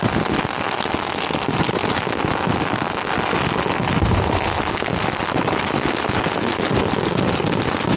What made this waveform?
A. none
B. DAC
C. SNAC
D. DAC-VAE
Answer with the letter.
A